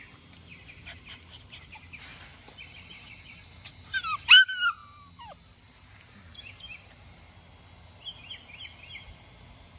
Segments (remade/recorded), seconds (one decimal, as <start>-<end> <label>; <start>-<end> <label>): 0.0-9.8 recorded